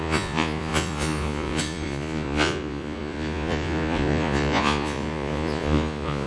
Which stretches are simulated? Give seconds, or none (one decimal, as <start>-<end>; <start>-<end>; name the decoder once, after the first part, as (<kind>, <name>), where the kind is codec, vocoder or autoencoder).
0.0-6.3 (vocoder, Vocos)